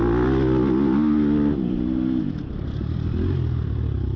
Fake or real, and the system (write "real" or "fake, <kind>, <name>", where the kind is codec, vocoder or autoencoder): real